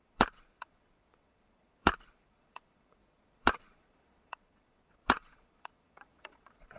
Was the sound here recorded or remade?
remade